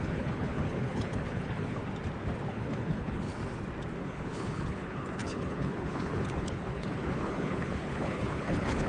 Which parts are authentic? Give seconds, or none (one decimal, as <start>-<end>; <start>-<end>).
1.8-2.5; 3.3-4.0